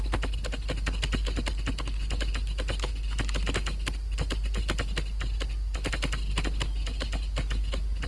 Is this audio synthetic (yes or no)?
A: no